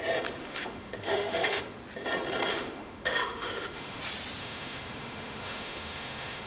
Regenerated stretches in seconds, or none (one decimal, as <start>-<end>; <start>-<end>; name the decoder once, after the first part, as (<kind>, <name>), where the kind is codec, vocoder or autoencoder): 0.4-1.6 (autoencoder, DAC-VAE); 2.5-4.0; 4.4-6.5